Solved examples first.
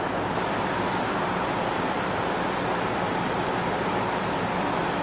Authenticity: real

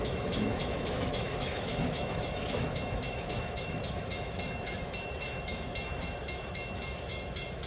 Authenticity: fake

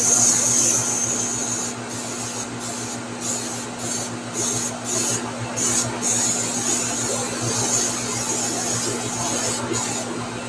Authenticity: real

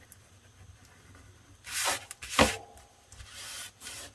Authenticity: real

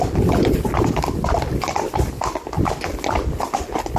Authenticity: real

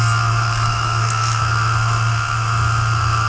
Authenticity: fake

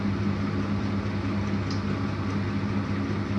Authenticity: real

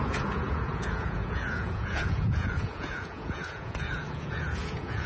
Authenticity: fake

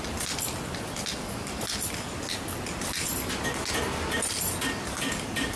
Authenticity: real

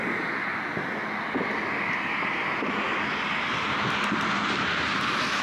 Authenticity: real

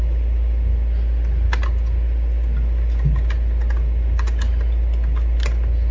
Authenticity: real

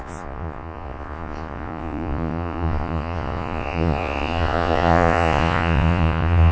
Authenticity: fake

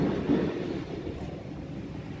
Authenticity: real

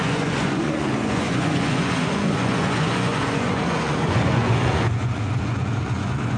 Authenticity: fake